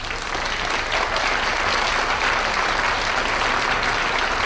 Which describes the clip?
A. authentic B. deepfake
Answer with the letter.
A